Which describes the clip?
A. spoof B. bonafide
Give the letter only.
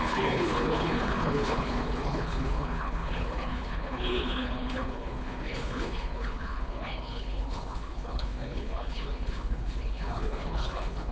A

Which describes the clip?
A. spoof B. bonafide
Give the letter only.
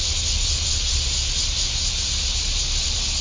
B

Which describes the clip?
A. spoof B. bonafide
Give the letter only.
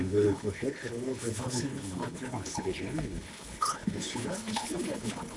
A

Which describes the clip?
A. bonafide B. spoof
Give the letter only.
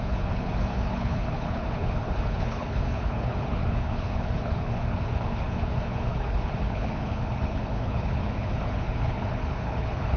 B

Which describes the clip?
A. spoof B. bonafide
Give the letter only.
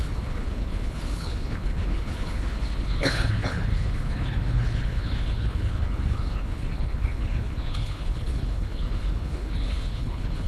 A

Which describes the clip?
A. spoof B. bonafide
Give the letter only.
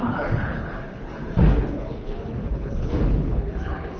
A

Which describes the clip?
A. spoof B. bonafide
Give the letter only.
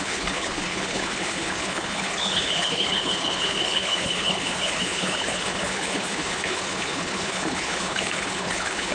A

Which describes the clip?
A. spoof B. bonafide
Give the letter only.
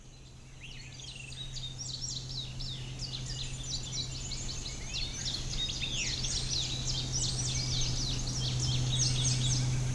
B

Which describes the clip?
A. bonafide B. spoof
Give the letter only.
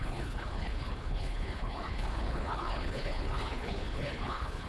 B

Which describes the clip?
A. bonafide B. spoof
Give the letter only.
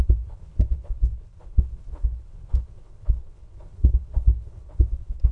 B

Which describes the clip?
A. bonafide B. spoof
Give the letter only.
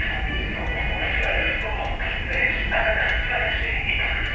A